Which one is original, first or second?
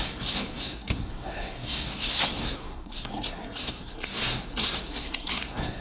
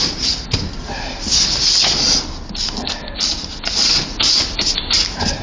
second